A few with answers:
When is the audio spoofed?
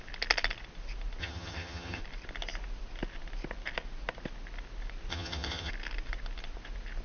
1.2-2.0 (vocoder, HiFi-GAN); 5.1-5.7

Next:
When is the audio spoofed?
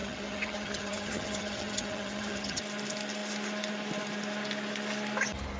0.0-2.6 (vocoder, HiFi-GAN)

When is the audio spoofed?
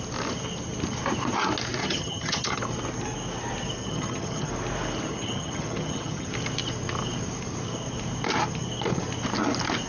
1.8-2.6 (vocoder, HiFi-GAN); 3.8-4.5; 5.1-6.3